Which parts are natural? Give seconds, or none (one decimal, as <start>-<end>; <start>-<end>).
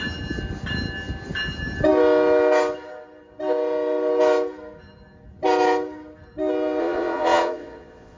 0.0-6.8